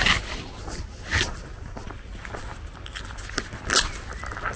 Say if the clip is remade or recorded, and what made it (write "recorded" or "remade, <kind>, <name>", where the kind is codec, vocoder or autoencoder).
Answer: recorded